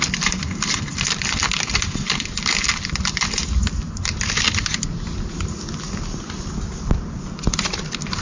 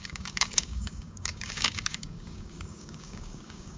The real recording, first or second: first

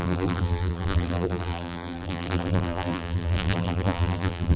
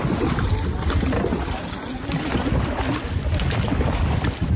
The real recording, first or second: second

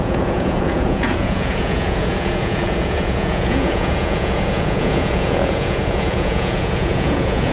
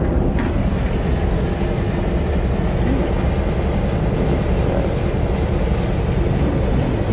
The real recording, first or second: second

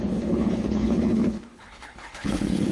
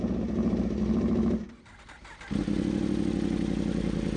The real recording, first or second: second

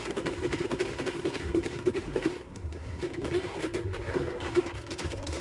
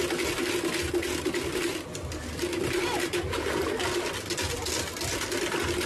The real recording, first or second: second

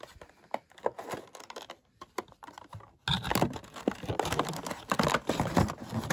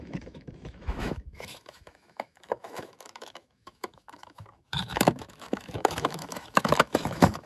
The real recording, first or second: first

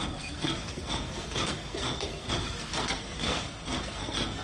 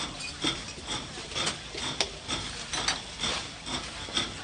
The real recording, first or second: second